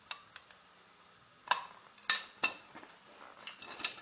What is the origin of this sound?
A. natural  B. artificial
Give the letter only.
A